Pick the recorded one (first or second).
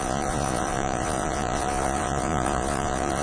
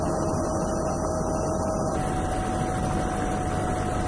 second